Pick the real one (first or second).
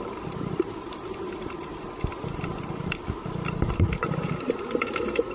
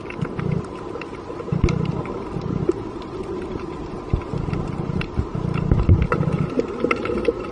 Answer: second